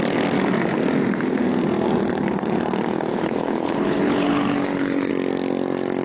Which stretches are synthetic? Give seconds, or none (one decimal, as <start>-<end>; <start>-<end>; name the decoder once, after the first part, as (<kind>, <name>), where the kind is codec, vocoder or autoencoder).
3.1-5.1 (codec, HILCodec)